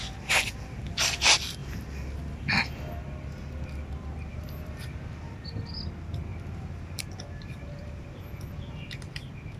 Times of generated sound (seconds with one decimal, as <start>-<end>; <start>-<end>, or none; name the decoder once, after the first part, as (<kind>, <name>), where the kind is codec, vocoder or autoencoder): 4.3-5.3 (vocoder, BigVGAN v2); 6.3-8.8